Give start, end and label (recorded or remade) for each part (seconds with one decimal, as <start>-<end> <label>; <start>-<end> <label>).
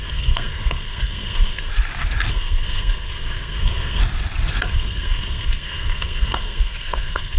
0.0-1.7 remade; 1.7-2.3 recorded; 2.3-4.0 remade; 4.0-4.6 recorded; 4.6-7.4 remade